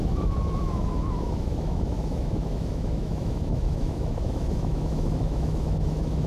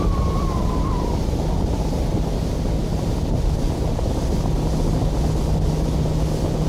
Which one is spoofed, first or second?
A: first